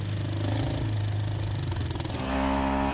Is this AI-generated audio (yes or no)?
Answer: no